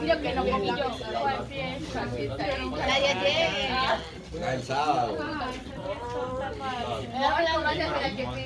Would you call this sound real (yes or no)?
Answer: yes